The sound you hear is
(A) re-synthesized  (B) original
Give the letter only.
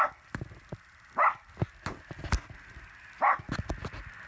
B